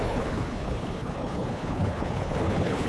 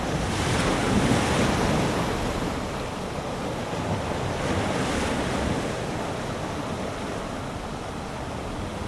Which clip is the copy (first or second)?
first